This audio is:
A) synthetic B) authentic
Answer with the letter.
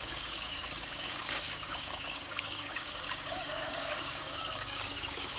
A